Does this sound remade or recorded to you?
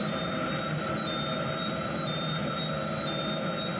recorded